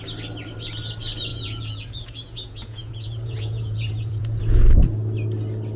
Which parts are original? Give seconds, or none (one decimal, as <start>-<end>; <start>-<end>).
0.0-1.3; 4.4-5.8

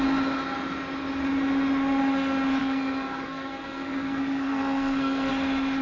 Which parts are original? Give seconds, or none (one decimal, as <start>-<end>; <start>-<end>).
0.0-2.6; 5.3-5.8